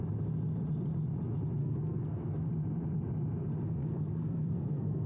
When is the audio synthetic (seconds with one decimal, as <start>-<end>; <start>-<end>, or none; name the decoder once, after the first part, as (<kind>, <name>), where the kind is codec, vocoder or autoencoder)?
1.6-2.5 (codec, SNAC); 3.8-5.1